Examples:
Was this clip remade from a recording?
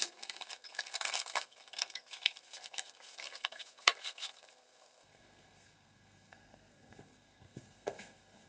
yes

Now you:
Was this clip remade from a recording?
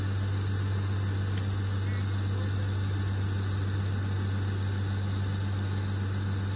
no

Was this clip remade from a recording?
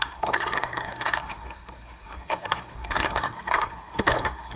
yes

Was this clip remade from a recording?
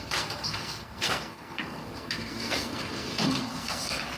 yes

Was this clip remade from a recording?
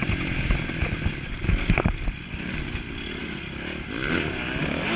no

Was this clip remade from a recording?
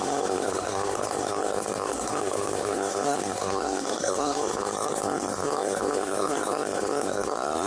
yes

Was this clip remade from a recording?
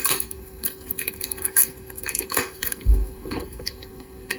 yes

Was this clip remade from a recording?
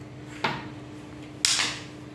no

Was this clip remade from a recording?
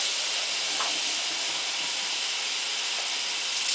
no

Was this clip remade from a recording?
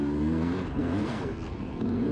yes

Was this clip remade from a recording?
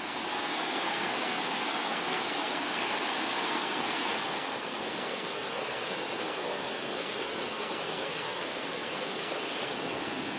yes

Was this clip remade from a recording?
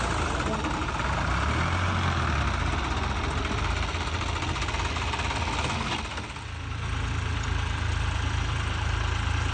no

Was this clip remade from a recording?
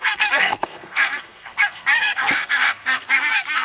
yes